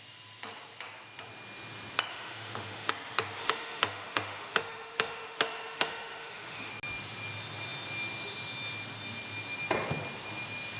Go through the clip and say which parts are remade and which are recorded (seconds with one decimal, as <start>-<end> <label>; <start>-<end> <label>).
0.0-2.1 recorded; 2.1-2.9 remade; 2.9-3.4 recorded; 3.4-6.7 remade; 6.7-10.8 recorded